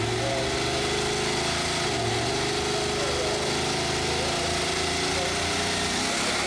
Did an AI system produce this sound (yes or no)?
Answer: no